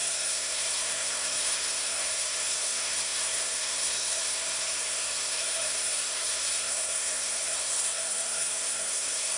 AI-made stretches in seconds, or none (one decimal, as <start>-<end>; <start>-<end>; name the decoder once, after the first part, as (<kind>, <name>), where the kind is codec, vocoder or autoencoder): 0.0-9.4 (codec, SNAC)